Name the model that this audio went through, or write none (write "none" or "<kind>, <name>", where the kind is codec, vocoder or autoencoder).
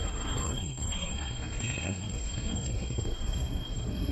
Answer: codec, SNAC